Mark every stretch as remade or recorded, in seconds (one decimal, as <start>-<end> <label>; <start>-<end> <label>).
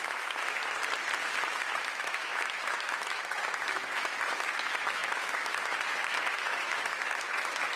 0.0-0.6 remade; 0.6-1.2 recorded; 1.2-7.8 remade